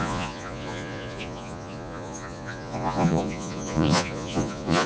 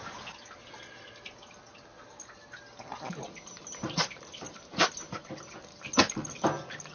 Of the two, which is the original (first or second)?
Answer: second